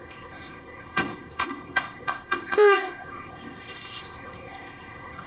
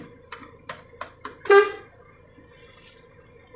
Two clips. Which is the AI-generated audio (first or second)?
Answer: first